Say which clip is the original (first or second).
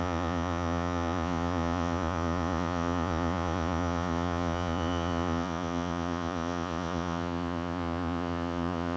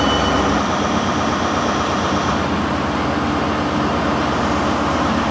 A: second